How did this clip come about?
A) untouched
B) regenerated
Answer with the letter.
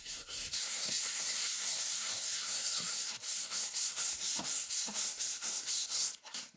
B